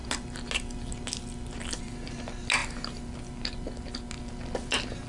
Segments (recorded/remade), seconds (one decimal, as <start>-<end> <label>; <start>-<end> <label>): 0.0-5.1 recorded